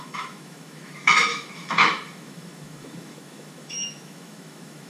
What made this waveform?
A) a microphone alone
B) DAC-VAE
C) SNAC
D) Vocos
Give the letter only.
B